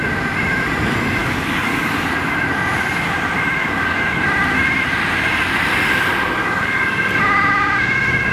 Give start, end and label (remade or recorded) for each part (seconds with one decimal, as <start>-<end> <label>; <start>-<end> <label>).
0.0-1.2 recorded; 1.2-1.9 remade; 1.9-3.6 recorded; 3.6-4.2 remade; 4.2-6.4 recorded; 6.4-7.1 remade; 7.1-8.3 recorded